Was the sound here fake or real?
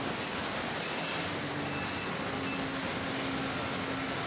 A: real